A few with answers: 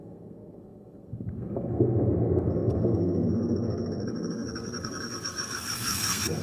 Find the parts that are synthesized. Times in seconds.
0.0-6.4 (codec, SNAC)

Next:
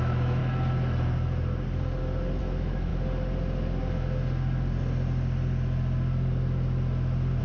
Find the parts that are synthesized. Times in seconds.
0.0-0.4 (autoencoder, DAC-VAE); 2.4-2.9

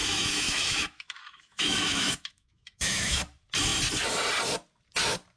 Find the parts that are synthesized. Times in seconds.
0.0-3.2 (autoencoder, DAC-VAE)

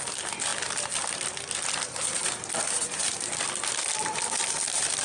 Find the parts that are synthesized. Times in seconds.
none

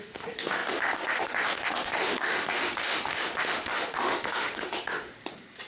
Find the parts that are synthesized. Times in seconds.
0.0-5.1 (autoencoder, DAC-VAE)

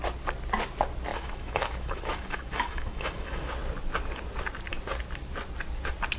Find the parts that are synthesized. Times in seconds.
1.1-3.5 (autoencoder, DAC-VAE)

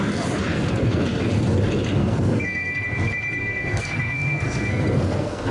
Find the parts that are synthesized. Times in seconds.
0.5-1.2 (codec, SNAC); 2.0-2.8; 3.4-5.5

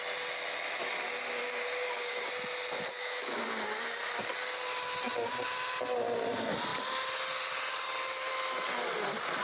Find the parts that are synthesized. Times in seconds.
1.4-2.3 (codec, DAC); 2.9-3.4